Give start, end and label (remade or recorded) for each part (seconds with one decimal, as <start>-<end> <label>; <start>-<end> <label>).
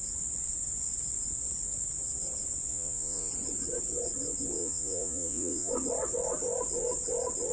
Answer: 0.0-2.7 recorded; 2.7-3.3 remade; 3.3-4.6 recorded; 4.6-5.7 remade; 5.7-7.5 recorded